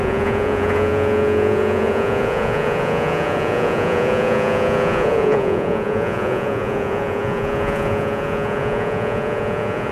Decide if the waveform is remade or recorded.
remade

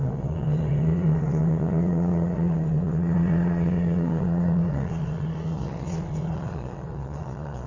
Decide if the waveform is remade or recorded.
remade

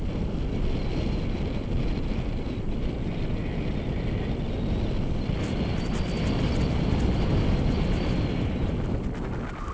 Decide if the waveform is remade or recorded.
recorded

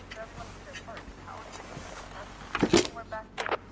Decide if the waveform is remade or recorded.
recorded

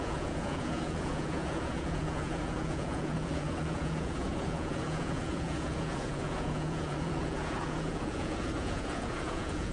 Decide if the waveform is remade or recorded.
remade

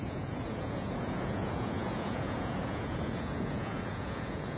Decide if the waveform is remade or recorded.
remade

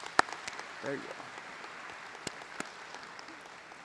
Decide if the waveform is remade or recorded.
recorded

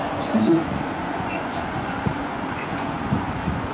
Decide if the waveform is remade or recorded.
remade